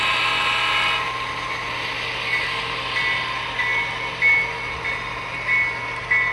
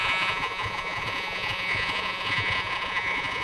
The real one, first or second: first